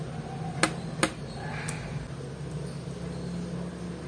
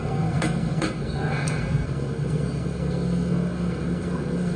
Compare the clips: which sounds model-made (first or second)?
second